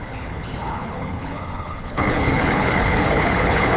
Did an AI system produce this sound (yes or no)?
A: yes